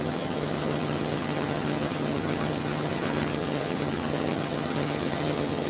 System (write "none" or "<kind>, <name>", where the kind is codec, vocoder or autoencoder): vocoder, HiFi-GAN